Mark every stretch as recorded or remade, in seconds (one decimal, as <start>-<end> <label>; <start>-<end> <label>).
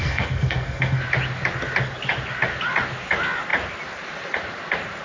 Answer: 0.0-1.0 remade; 1.0-5.0 recorded